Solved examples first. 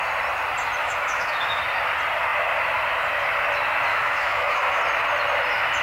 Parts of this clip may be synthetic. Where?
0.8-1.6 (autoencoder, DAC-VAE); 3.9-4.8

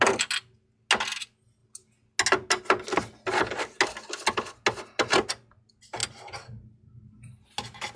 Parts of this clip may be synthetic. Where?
none

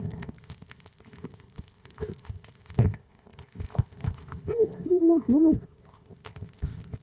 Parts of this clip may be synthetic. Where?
0.0-7.0 (codec, ZipCodec)

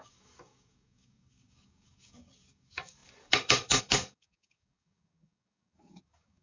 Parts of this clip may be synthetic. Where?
0.0-6.4 (codec, DAC)